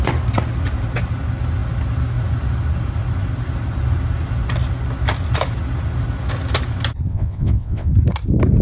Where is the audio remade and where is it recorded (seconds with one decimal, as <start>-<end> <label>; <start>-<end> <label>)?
0.0-7.1 recorded; 7.1-7.9 remade; 7.9-8.6 recorded